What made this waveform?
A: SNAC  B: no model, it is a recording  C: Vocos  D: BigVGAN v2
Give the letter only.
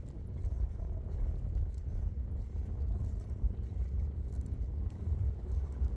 B